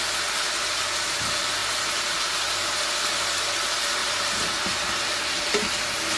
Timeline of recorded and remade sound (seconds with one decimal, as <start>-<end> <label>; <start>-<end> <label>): 0.0-1.6 recorded; 1.6-2.5 remade; 2.5-4.0 recorded; 4.0-5.5 remade; 5.5-6.2 recorded